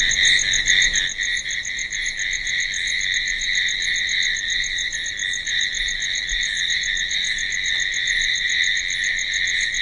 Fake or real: real